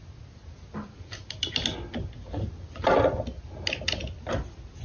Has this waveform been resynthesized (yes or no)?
no